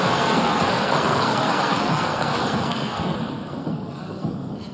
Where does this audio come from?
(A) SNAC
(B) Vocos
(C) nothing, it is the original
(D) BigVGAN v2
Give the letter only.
A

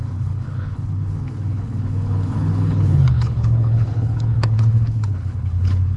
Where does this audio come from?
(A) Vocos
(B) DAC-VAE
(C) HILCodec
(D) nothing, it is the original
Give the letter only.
C